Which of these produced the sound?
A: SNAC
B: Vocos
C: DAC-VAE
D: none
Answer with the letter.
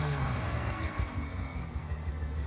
A